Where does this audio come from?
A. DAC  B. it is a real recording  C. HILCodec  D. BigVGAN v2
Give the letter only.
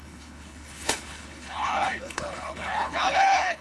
C